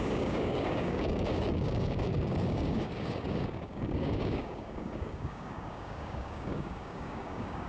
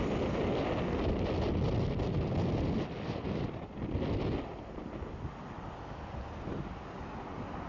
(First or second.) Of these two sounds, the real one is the second